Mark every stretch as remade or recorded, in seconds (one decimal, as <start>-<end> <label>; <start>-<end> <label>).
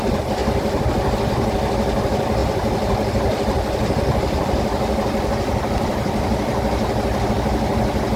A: 0.0-0.4 recorded; 0.4-0.9 remade; 0.9-2.4 recorded; 2.4-7.3 remade; 7.3-8.2 recorded